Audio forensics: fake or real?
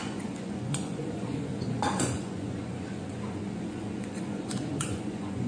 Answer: fake